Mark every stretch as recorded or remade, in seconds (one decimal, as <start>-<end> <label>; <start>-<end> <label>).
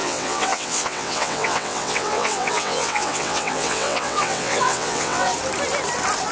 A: 0.0-5.3 remade; 5.3-6.3 recorded